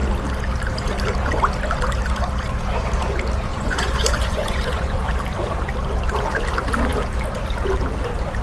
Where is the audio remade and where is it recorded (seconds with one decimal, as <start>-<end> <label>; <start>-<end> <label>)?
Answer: 0.0-3.5 recorded; 3.5-5.1 remade; 5.1-8.4 recorded